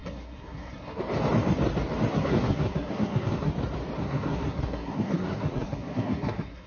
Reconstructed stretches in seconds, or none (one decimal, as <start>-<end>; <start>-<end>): 0.0-1.0; 2.1-3.5; 4.0-6.7